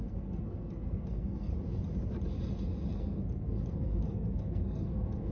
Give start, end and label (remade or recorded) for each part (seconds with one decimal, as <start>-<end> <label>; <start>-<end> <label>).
0.0-1.5 remade; 1.5-2.9 recorded; 2.9-5.3 remade